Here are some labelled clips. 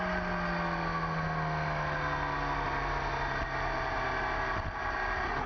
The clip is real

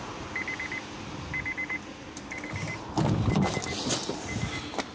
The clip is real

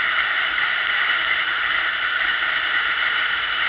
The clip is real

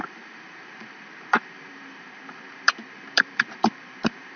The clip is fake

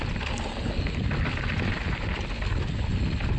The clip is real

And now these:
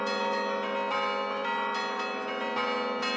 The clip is real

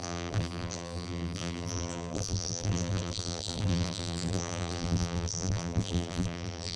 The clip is fake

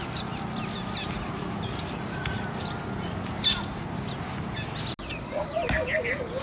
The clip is real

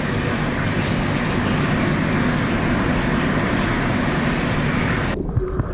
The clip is real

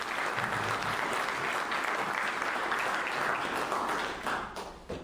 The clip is real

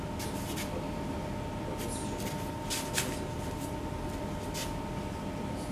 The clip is real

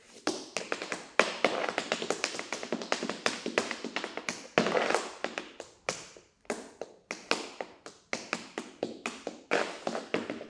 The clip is real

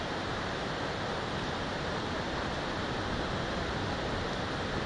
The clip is real